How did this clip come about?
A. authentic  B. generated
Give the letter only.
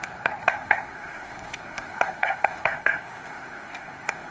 B